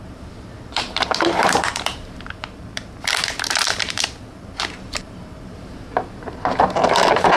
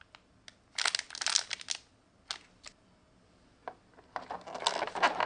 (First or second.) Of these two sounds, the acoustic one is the second